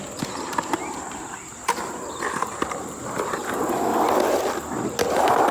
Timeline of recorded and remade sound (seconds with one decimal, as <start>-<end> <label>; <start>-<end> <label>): 0.0-0.8 recorded; 0.8-3.5 remade; 3.5-5.5 recorded